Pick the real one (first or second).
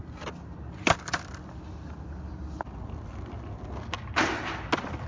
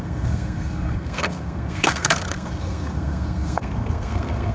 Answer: first